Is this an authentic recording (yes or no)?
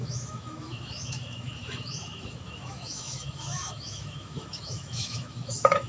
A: no